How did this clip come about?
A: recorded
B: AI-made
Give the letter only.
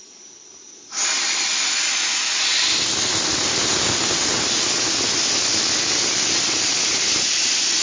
A